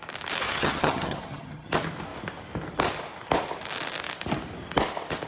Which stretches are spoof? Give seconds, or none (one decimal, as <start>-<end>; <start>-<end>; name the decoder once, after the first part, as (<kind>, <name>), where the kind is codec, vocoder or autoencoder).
0.4-1.7 (vocoder, HiFi-GAN)